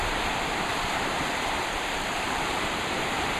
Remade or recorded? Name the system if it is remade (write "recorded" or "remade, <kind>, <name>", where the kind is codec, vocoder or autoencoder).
remade, vocoder, BigVGAN v2